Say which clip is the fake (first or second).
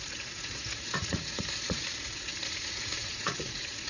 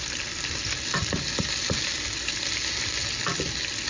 first